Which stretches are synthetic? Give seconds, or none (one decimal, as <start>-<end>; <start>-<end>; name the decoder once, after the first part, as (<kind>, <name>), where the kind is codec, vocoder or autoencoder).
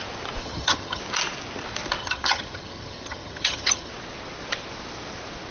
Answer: 0.4-1.0 (vocoder, HiFi-GAN); 2.0-3.9